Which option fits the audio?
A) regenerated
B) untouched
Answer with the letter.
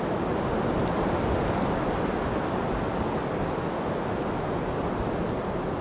B